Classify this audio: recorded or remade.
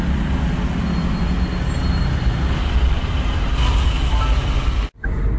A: recorded